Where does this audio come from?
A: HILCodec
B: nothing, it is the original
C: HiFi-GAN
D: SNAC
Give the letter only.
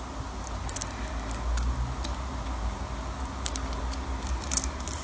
B